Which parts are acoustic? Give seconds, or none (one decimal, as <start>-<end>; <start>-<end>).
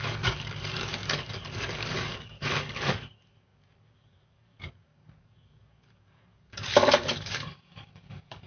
none